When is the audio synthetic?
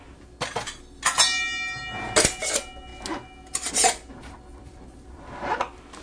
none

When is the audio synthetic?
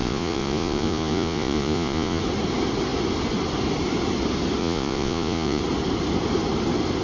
0.0-2.2; 4.6-5.6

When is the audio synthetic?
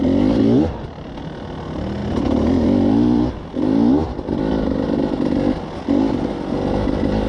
none